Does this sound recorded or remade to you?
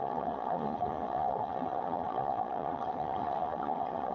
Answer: remade